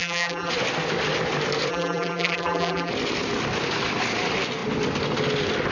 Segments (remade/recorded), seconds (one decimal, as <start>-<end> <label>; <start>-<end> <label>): 0.0-0.5 remade; 0.5-1.7 recorded; 1.7-2.9 remade; 2.9-5.7 recorded